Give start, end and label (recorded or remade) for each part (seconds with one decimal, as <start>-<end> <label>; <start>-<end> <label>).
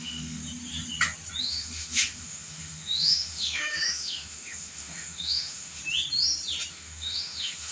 0.0-0.4 remade; 0.4-1.4 recorded; 1.4-5.8 remade; 5.8-6.7 recorded; 6.7-7.7 remade